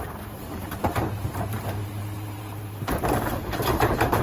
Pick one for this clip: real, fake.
fake